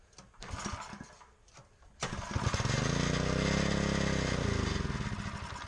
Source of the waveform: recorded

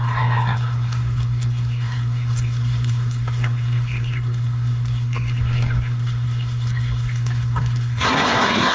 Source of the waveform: remade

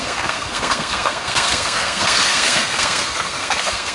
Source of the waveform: remade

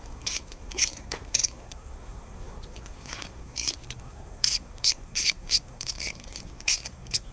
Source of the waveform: remade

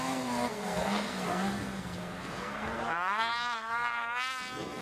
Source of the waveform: remade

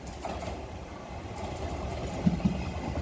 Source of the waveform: recorded